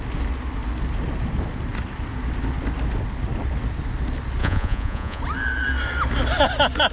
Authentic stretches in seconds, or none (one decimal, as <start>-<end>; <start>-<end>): 0.0-4.4; 5.2-6.9